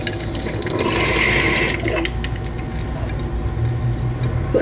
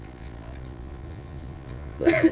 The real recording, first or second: first